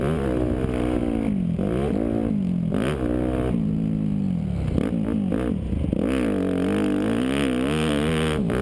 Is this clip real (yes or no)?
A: yes